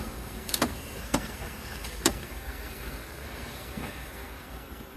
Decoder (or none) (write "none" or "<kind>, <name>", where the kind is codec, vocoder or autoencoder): codec, SNAC